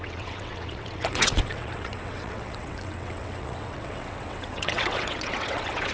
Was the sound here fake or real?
fake